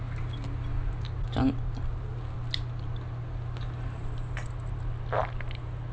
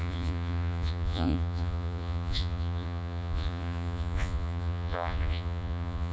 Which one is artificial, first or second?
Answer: second